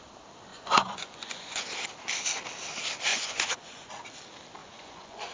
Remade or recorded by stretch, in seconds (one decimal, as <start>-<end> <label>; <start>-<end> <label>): 0.0-0.5 recorded; 0.5-1.6 remade; 1.6-3.1 recorded; 3.1-3.9 remade; 3.9-4.6 recorded; 4.6-5.3 remade